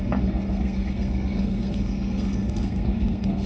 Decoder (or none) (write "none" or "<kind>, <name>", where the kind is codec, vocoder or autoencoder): codec, SNAC